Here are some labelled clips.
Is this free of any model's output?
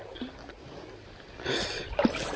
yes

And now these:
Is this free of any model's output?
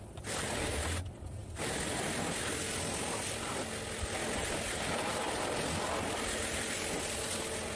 yes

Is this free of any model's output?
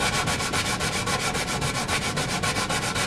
yes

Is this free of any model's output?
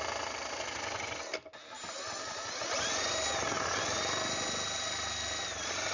yes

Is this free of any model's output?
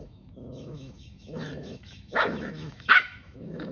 no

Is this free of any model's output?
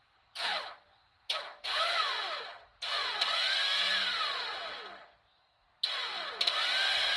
yes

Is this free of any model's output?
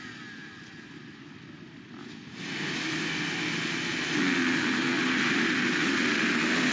yes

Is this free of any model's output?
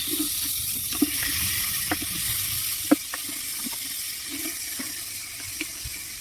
no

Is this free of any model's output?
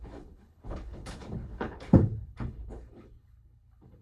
no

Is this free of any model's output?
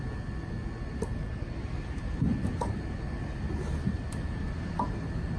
yes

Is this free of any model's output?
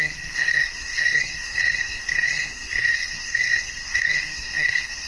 no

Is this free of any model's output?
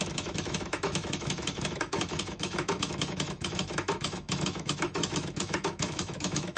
no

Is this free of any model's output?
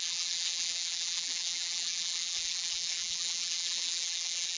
no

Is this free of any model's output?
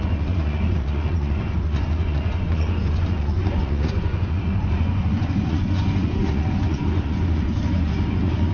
no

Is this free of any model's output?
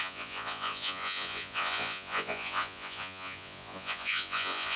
no